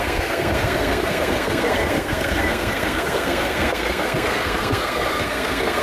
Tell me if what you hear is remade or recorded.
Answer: remade